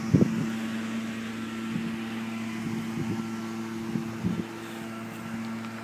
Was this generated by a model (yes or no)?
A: no